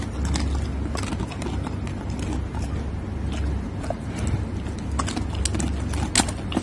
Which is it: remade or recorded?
recorded